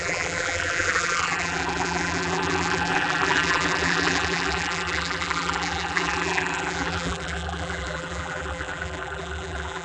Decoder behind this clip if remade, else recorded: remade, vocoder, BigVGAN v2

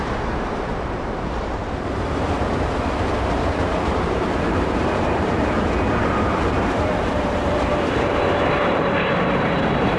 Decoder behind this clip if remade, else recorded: remade, vocoder, BigVGAN v2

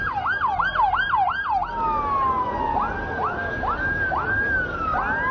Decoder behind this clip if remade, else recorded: recorded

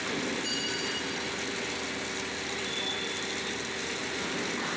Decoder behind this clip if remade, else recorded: recorded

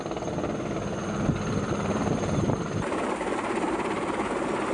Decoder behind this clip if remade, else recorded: recorded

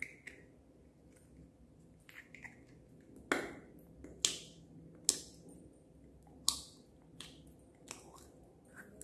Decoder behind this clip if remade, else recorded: recorded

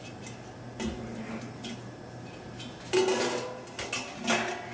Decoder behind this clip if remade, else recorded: recorded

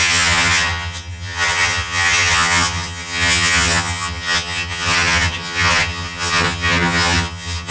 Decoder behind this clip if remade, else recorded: remade, vocoder, HiFi-GAN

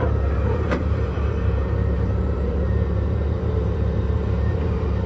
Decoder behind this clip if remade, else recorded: remade, vocoder, BigVGAN v2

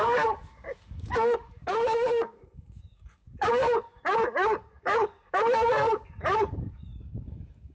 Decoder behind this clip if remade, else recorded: remade, codec, DAC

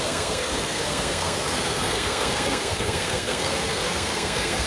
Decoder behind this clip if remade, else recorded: remade, codec, SNAC